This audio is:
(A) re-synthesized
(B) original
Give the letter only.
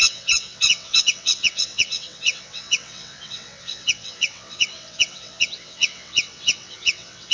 A